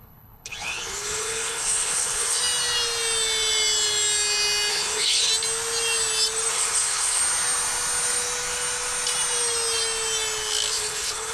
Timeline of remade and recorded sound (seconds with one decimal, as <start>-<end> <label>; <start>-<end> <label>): 0.0-2.4 remade; 2.4-4.7 recorded; 4.7-5.3 remade; 5.3-6.5 recorded; 6.5-7.2 remade; 7.2-10.7 recorded; 10.7-11.3 remade